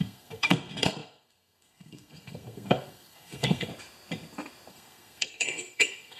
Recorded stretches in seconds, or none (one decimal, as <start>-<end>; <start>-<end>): 3.7-4.7

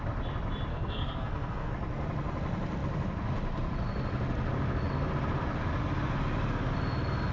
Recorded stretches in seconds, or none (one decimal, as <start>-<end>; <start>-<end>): 0.0-0.7; 1.7-7.3